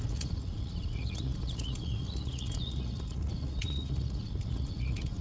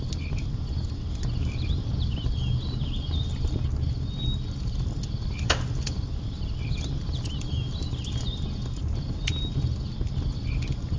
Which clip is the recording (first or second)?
second